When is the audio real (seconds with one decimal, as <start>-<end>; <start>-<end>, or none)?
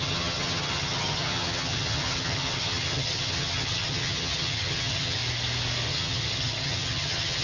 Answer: 5.2-5.9